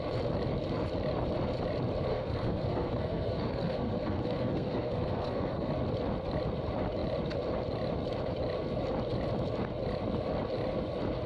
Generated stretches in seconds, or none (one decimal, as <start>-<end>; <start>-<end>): 2.1-5.7